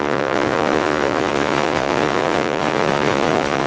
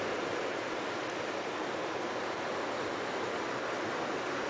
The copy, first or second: first